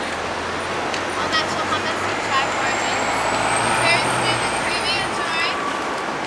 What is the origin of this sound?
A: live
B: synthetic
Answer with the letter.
A